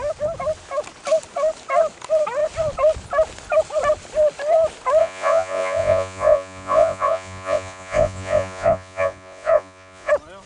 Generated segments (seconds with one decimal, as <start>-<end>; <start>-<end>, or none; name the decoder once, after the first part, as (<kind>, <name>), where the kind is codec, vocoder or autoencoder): 5.0-10.1 (vocoder, Vocos)